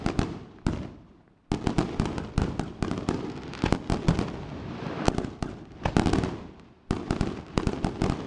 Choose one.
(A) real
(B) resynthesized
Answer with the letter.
A